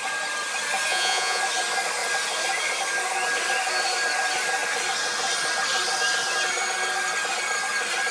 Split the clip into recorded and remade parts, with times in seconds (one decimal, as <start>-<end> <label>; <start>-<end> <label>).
0.0-0.9 recorded; 0.9-1.4 remade; 1.4-8.1 recorded